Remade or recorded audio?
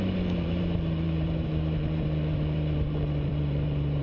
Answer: remade